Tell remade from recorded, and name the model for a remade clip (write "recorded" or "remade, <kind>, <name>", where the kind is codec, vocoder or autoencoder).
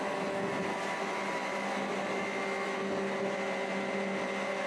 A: recorded